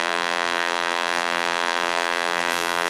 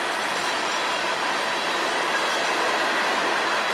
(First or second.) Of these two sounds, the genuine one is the second